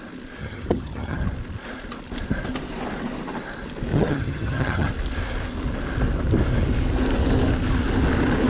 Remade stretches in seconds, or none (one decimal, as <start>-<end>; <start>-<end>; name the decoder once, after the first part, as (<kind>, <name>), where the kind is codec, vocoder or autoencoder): 0.4-1.2 (vocoder, HiFi-GAN); 3.9-4.9